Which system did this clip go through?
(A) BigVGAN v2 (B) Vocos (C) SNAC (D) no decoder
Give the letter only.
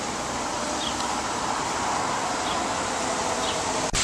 D